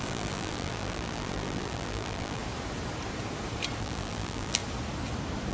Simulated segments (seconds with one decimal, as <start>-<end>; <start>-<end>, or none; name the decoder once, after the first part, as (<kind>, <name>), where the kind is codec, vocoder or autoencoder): 0.0-2.4 (vocoder, BigVGAN v2); 3.8-4.6